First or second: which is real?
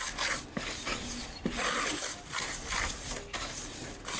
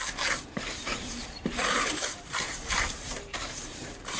first